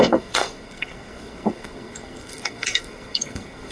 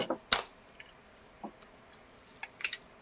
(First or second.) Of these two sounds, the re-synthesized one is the first